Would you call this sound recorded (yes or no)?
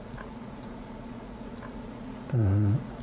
no